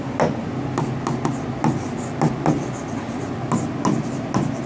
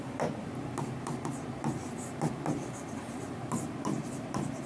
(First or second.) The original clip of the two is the first